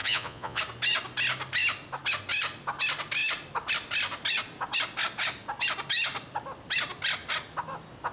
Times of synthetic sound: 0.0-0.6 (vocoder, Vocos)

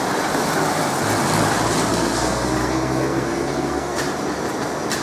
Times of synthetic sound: 1.9-4.0 (codec, SNAC)

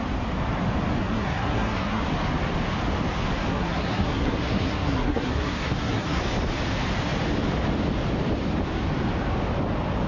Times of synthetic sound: 1.0-2.0 (codec, SNAC); 3.5-6.2

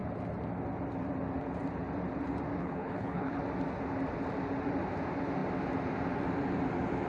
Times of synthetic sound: 2.6-3.4 (codec, HILCodec)

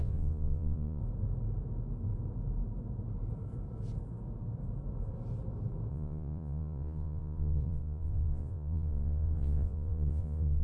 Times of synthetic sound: 0.0-1.0 (vocoder, Vocos); 5.9-10.6

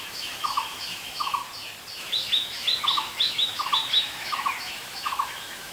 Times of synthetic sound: 0.0-1.4 (autoencoder, DAC-VAE); 2.0-5.7

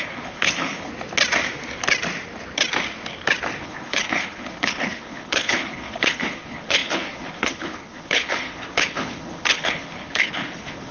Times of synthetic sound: 0.0-0.9 (codec, HILCodec); 3.6-10.9

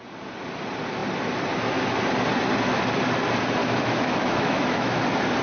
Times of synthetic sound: 3.6-5.0 (autoencoder, DAC-VAE)